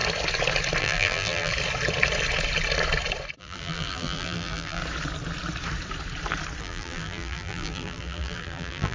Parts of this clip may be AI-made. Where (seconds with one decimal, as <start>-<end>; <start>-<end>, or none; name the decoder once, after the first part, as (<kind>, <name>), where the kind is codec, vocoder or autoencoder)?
0.8-1.5 (vocoder, BigVGAN v2); 3.4-4.8; 6.6-8.9